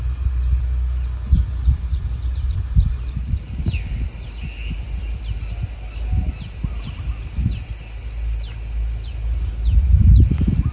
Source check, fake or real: real